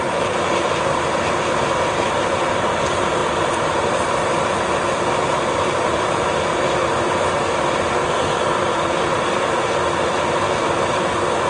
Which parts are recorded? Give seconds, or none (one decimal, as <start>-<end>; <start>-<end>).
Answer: 0.0-3.2; 6.0-11.5